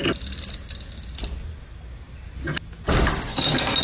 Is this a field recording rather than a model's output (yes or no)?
yes